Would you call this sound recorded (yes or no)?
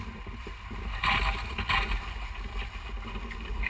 yes